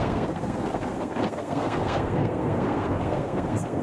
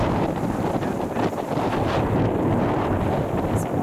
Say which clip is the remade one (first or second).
first